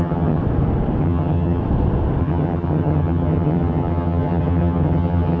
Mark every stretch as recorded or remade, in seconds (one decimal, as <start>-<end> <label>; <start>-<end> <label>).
0.0-0.4 remade; 0.4-1.0 recorded; 1.0-1.6 remade; 1.6-2.2 recorded; 2.2-5.4 remade